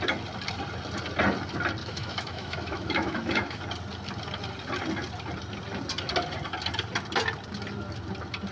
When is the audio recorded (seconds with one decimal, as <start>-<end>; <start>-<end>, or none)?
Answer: 0.0-1.8; 3.6-8.5